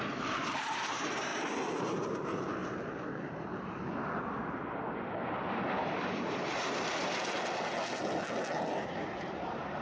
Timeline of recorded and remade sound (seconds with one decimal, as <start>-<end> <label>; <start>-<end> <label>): 0.0-1.3 remade; 1.3-1.8 recorded; 1.8-4.0 remade; 4.0-8.7 recorded; 8.7-9.8 remade